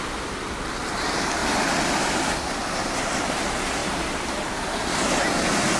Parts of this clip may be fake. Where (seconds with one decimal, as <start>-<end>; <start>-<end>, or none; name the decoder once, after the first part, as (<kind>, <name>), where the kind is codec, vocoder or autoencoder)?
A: 1.4-3.2 (vocoder, BigVGAN v2); 3.8-4.5